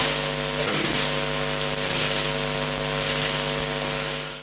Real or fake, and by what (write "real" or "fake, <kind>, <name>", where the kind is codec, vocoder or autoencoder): real